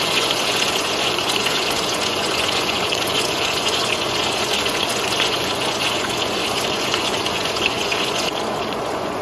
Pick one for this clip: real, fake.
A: fake